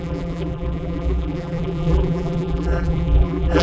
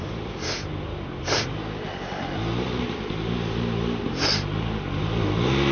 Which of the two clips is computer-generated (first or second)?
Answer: first